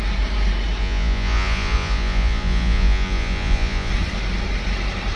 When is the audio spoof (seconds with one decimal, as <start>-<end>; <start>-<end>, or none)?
0.8-3.9